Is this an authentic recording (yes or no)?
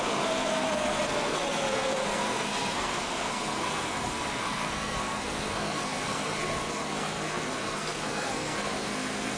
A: no